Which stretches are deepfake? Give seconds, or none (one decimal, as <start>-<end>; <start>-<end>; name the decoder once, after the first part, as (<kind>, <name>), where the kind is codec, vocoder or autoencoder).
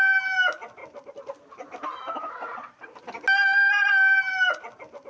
0.8-3.0 (vocoder, BigVGAN v2); 3.9-5.1